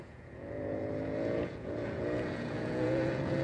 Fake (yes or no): yes